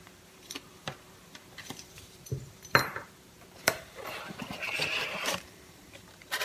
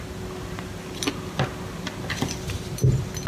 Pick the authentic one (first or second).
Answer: second